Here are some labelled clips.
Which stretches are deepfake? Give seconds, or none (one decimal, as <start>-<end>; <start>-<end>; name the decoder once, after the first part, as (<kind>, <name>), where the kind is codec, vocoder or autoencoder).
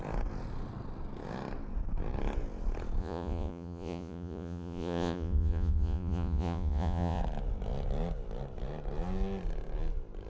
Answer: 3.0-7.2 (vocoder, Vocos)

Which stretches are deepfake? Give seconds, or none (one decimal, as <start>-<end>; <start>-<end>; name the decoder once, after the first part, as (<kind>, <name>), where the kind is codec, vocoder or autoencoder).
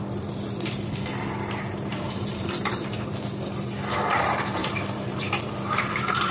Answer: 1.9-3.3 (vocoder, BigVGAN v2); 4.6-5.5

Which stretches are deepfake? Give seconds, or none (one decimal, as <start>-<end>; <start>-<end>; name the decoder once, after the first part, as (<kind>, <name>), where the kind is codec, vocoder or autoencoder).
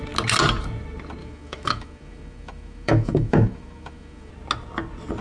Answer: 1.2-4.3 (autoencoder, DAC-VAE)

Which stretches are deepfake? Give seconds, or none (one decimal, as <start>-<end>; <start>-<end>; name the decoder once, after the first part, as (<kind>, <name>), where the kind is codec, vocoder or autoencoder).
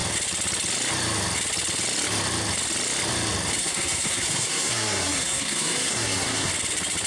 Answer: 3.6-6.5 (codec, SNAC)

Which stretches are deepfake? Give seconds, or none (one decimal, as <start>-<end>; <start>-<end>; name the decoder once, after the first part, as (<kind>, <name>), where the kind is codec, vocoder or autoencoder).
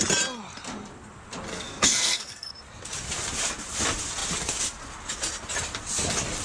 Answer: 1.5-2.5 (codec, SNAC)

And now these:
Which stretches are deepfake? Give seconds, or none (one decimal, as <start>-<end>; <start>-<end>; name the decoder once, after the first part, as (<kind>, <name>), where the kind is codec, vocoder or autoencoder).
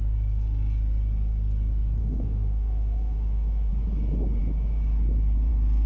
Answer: 2.0-3.7 (autoencoder, DAC-VAE)